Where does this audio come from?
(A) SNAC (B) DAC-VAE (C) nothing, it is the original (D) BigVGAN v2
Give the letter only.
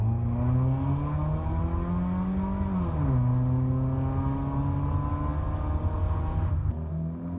C